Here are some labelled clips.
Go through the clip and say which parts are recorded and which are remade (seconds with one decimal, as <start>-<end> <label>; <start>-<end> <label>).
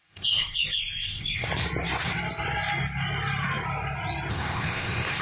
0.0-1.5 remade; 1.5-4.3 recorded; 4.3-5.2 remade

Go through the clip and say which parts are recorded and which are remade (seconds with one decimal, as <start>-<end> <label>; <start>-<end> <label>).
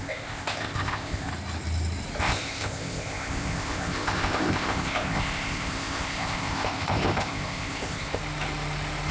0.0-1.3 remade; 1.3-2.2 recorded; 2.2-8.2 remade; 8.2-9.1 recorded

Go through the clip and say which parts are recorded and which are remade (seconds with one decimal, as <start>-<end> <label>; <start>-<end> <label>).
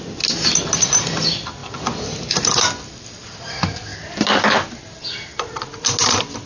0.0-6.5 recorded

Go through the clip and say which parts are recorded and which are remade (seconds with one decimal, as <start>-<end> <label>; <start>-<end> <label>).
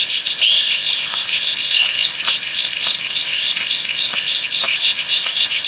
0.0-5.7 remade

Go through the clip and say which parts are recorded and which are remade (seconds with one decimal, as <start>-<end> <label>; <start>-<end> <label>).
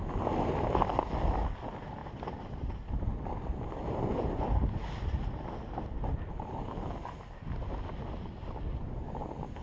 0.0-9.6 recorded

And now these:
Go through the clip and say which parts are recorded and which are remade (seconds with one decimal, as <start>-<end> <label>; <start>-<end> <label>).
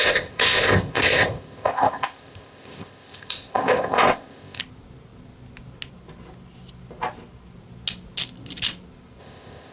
0.0-4.6 remade; 4.6-9.2 recorded; 9.2-9.7 remade